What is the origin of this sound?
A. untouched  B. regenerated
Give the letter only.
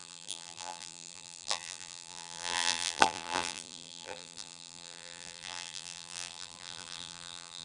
B